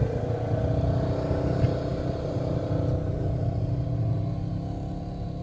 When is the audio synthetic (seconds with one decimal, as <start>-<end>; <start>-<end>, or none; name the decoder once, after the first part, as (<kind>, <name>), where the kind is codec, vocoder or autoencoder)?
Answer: none